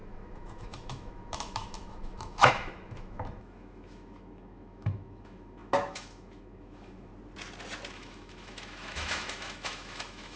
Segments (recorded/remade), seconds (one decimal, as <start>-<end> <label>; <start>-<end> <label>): 0.0-7.1 remade; 7.1-7.9 recorded; 7.9-10.4 remade